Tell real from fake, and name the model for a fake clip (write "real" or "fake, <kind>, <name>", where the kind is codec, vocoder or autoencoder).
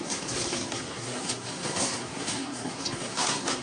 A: fake, codec, SNAC